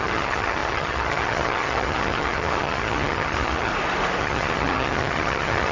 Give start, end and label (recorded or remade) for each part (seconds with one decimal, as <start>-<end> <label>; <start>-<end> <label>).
0.0-3.7 remade; 3.7-4.2 recorded; 4.2-5.7 remade